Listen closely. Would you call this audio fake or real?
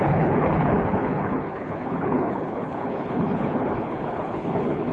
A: fake